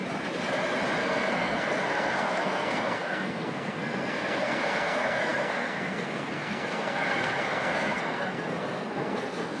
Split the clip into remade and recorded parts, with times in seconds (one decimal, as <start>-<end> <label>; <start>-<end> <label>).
0.0-1.0 recorded; 1.0-9.6 remade